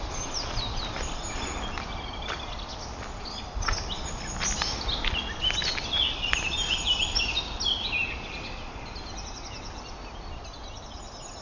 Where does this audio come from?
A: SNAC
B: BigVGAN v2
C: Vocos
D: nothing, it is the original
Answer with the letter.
D